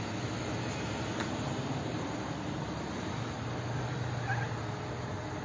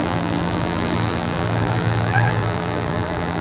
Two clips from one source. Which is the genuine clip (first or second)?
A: first